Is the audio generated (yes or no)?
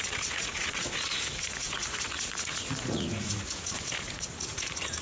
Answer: yes